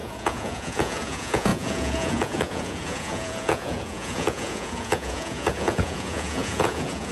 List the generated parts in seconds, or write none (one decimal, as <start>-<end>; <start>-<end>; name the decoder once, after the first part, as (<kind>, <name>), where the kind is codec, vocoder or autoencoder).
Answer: 0.0-7.1 (vocoder, Vocos)